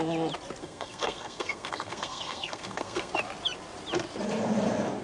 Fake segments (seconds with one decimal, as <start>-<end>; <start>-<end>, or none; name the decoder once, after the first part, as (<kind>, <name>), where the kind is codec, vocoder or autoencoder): 0.6-3.1 (codec, SNAC)